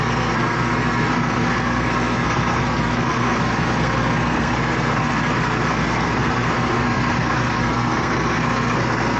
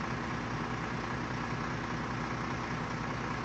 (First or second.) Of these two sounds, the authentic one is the second